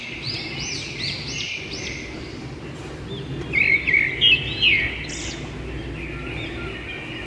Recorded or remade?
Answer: recorded